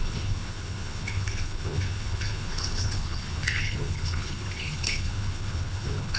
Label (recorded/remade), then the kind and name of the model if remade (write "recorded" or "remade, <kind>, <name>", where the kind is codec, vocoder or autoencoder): remade, codec, HILCodec